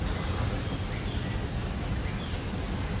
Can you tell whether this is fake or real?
real